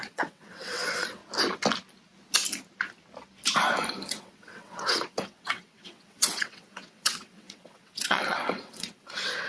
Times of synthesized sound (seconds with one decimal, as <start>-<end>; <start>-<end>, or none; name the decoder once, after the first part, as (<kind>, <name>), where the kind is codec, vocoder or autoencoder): 0.0-1.2 (vocoder, WaveNeXt); 4.1-9.5